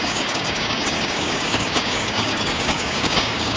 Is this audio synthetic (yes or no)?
yes